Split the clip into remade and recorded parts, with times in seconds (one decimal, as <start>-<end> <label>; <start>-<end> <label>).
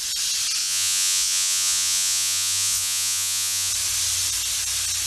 0.0-0.6 recorded; 0.6-3.7 remade; 3.7-5.1 recorded